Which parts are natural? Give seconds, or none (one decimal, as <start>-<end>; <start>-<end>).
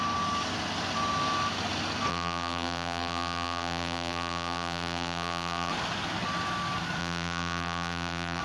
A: 0.0-2.1; 5.7-7.0